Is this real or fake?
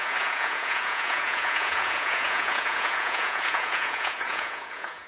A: fake